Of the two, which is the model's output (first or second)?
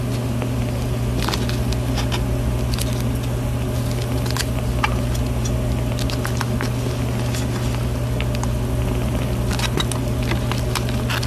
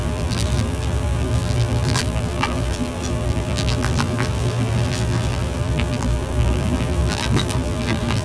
second